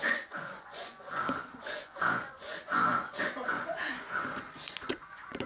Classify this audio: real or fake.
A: fake